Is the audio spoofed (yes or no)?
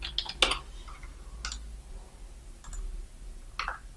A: no